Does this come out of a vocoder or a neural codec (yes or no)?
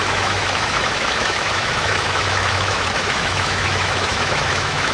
yes